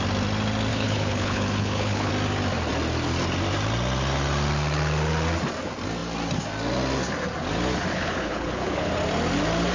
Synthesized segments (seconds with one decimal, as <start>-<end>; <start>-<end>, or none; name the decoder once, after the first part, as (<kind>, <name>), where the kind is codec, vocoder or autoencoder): 0.7-2.1 (codec, HILCodec); 7.9-8.9